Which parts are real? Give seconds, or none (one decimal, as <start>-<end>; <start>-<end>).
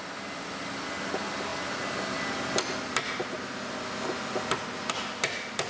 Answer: 0.0-5.7